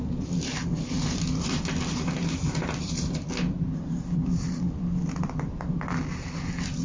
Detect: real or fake fake